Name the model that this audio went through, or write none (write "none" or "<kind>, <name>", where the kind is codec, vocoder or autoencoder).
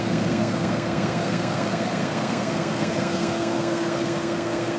codec, SNAC